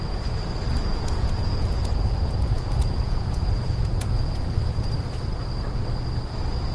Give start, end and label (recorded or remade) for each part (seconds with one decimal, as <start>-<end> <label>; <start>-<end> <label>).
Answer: 0.0-0.9 recorded; 0.9-4.9 remade; 4.9-6.7 recorded